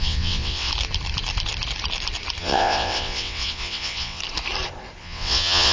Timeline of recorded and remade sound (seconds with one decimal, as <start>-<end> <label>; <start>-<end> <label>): 0.0-0.7 remade; 0.7-2.4 recorded; 2.4-4.2 remade; 4.2-5.0 recorded; 5.0-5.7 remade

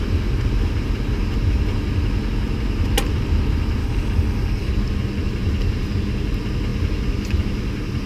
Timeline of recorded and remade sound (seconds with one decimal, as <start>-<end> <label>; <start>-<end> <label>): 0.0-3.8 recorded; 3.8-4.7 remade; 4.7-8.1 recorded

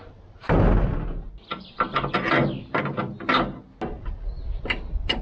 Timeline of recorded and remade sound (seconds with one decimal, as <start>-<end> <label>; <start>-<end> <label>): 0.0-5.2 recorded

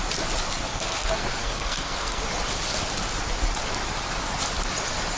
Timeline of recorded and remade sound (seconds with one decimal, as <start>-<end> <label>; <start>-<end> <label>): 0.0-0.7 recorded; 0.7-2.2 remade; 2.2-5.2 recorded

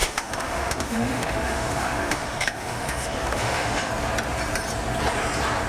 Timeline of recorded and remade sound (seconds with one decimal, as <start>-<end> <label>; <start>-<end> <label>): 0.0-3.9 remade; 3.9-5.7 recorded

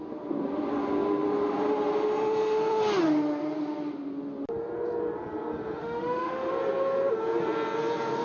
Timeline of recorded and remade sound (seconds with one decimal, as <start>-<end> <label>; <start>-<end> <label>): 0.0-5.8 recorded; 5.8-6.5 remade; 6.5-8.2 recorded

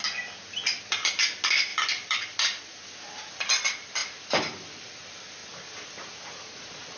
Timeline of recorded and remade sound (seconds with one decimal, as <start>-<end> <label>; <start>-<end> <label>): 0.0-1.7 recorded; 1.7-2.6 remade; 2.6-4.0 recorded; 4.0-4.9 remade; 4.9-5.4 recorded; 5.4-7.0 remade

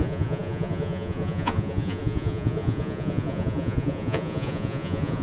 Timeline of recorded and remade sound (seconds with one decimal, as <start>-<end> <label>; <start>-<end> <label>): 0.0-5.2 remade